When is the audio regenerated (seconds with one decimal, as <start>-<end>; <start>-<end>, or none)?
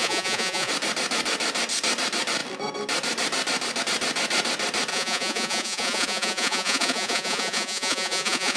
0.0-0.7; 4.9-8.6